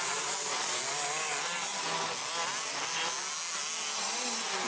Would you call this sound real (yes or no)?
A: yes